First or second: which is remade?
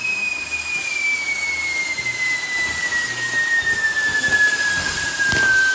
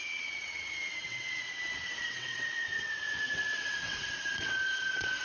second